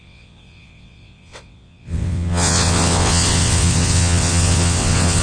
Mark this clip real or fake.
fake